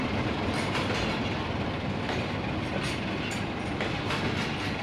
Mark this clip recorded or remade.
recorded